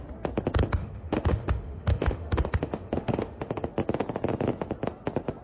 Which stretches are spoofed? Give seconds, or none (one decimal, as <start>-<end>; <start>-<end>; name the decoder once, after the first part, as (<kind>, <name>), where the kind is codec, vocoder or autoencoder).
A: 0.8-3.7 (autoencoder, DAC-VAE)